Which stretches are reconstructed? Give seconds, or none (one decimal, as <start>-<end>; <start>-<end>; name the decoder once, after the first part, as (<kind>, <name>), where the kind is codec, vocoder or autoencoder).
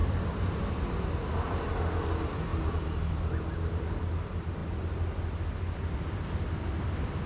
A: 0.0-1.8 (vocoder, BigVGAN v2); 2.5-3.0